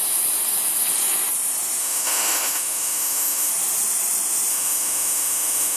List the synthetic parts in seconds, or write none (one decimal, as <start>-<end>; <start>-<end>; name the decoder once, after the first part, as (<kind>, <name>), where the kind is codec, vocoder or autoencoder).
1.8-3.5 (autoencoder, DAC-VAE); 4.5-5.8